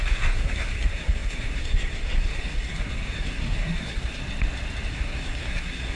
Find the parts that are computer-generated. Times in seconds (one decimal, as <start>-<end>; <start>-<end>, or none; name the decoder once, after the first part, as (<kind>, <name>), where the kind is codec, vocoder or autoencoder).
0.0-4.2 (codec, SNAC); 4.9-6.0